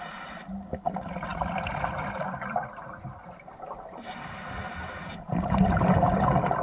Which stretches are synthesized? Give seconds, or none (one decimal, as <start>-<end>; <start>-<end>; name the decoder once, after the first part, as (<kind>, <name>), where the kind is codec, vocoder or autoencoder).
none